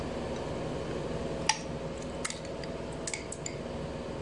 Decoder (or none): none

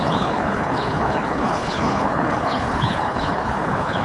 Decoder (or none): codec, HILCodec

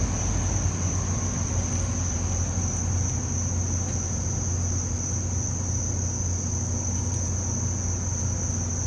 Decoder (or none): none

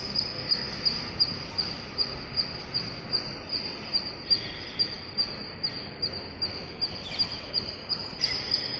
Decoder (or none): none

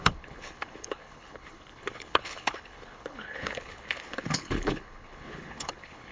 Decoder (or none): codec, HILCodec